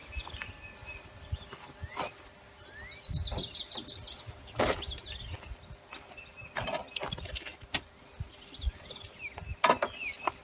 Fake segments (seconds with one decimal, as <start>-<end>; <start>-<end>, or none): none